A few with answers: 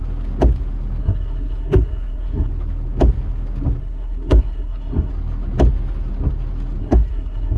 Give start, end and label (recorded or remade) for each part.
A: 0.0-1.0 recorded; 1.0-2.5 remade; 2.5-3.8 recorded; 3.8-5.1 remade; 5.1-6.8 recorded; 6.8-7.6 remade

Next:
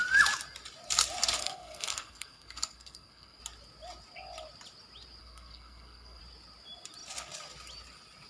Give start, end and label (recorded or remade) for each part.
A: 0.0-1.4 recorded; 1.4-3.4 remade; 3.4-5.2 recorded; 5.2-6.2 remade; 6.2-8.3 recorded

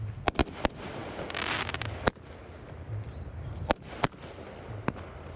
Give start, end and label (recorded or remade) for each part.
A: 0.0-5.4 recorded

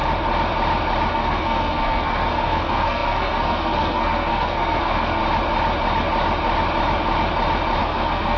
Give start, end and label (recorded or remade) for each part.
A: 0.0-1.1 recorded; 1.1-5.2 remade; 5.2-7.8 recorded; 7.8-8.4 remade

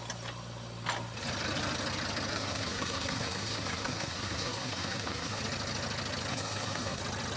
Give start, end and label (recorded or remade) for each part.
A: 0.0-2.3 recorded; 2.3-5.4 remade; 5.4-6.3 recorded; 6.3-7.0 remade; 7.0-7.4 recorded